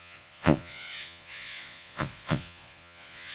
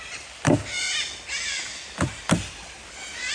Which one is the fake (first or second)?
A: first